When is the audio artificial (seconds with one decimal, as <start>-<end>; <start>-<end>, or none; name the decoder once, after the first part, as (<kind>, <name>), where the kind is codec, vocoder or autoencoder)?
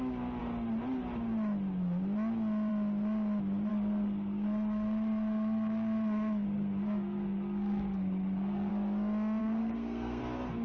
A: 3.7-8.7 (codec, SNAC); 9.4-10.2